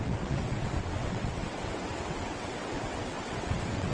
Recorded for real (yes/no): no